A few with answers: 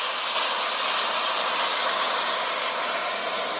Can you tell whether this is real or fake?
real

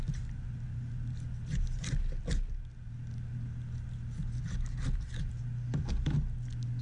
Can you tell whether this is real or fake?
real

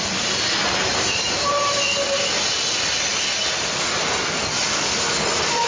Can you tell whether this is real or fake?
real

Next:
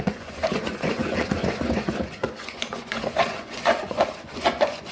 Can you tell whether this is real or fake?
fake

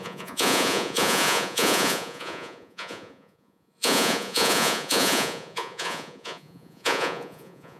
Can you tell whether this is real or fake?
fake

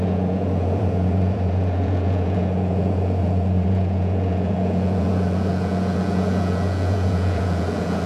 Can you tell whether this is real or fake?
fake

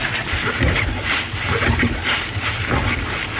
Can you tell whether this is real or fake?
real